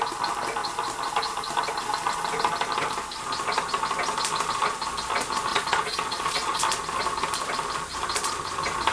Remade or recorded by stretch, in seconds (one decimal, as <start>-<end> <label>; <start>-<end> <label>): 0.0-5.5 recorded; 5.5-6.6 remade; 6.6-8.9 recorded